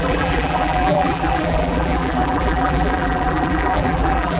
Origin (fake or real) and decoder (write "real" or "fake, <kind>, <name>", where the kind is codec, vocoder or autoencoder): fake, vocoder, BigVGAN v2